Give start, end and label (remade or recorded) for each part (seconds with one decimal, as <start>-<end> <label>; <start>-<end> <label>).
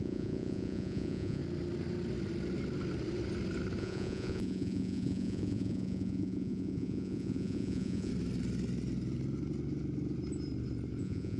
0.0-1.4 remade; 1.4-3.8 recorded; 3.8-8.1 remade; 8.1-11.0 recorded; 11.0-11.4 remade